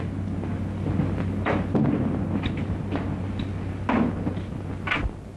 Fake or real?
real